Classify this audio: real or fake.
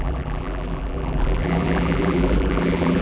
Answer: fake